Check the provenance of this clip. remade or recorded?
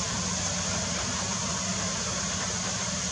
recorded